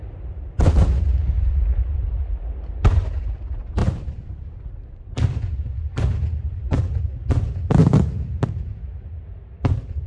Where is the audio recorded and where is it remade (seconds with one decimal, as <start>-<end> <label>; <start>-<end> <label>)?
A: 0.0-3.8 recorded; 3.8-6.8 remade; 6.8-10.1 recorded